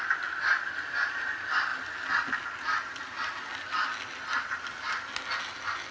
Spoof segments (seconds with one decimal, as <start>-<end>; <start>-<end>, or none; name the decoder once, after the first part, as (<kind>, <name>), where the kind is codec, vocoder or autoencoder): none